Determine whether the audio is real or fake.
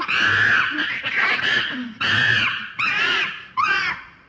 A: fake